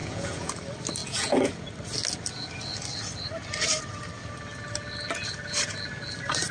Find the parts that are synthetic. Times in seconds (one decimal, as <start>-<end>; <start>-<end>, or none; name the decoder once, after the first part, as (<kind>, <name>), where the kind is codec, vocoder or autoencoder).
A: 0.0-0.5 (vocoder, Vocos); 1.0-1.6